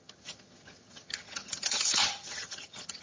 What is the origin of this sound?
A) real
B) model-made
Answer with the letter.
B